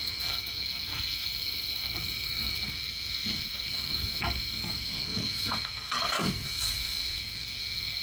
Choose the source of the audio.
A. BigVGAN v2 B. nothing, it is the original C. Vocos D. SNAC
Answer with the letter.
D